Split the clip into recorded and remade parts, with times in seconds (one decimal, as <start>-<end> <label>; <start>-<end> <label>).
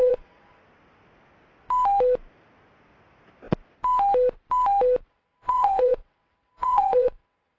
0.0-0.6 remade; 0.6-5.1 recorded; 5.1-7.6 remade